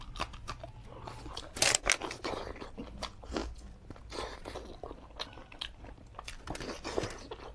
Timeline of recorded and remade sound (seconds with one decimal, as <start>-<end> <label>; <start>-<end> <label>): 0.0-7.5 recorded